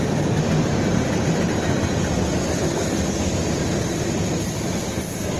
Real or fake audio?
real